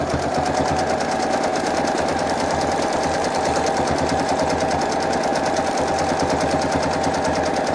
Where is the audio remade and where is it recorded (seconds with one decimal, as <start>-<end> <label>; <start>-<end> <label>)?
0.0-1.5 recorded; 1.5-4.2 remade; 4.2-7.7 recorded